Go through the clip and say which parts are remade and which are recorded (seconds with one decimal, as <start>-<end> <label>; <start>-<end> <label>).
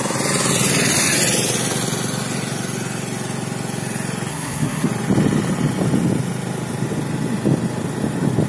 0.0-4.3 recorded; 4.3-4.9 remade; 4.9-8.5 recorded